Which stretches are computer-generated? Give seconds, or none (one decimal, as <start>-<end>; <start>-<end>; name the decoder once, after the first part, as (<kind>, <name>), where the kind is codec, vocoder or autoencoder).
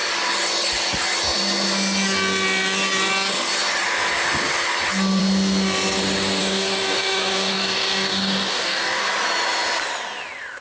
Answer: 6.4-9.0 (codec, DAC)